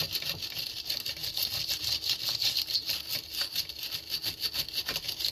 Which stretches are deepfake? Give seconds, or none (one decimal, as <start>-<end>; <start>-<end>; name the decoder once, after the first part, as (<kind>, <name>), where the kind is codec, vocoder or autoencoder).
none